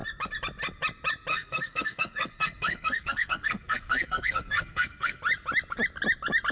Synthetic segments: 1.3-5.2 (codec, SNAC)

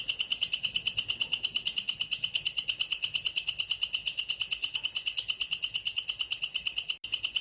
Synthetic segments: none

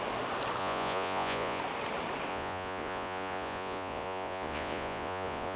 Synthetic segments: 0.6-1.6 (vocoder, Vocos); 2.3-5.6